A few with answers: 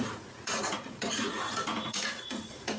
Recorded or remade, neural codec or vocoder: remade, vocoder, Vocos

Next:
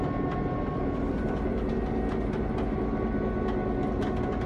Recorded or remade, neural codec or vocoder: recorded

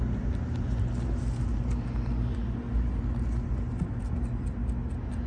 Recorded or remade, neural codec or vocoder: recorded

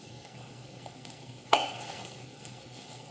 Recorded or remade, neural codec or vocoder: remade, codec, SNAC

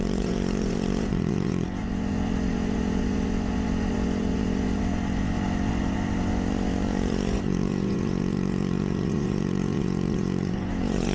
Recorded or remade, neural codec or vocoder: remade, vocoder, Vocos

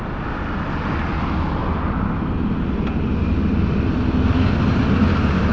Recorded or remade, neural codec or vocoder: recorded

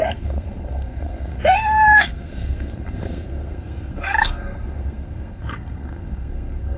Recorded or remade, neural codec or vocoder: remade, codec, SNAC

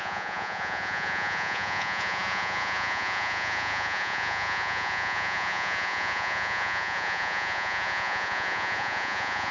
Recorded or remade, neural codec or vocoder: remade, vocoder, Vocos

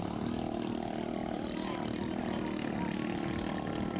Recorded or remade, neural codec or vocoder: recorded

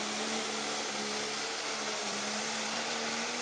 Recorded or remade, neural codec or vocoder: remade, vocoder, BigVGAN v2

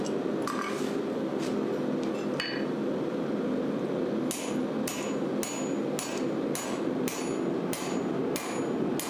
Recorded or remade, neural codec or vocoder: recorded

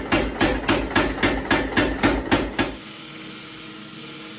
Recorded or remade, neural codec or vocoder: recorded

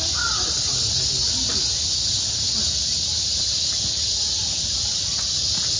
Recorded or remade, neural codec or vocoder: recorded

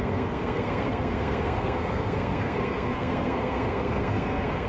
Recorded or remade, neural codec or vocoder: remade, codec, SNAC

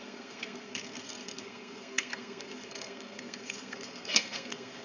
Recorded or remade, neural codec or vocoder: remade, codec, SNAC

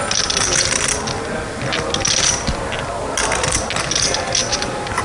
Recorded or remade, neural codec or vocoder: recorded